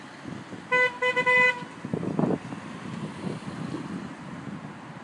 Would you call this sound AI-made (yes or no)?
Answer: no